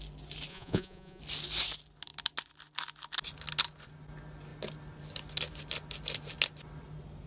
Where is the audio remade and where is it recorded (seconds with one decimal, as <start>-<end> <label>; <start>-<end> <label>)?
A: 0.0-0.5 recorded; 0.5-1.2 remade; 1.2-7.3 recorded